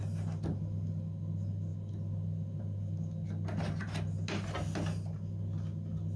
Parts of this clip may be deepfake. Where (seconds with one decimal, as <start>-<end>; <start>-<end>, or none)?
none